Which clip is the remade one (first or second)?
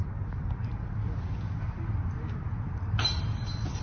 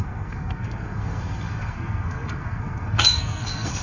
second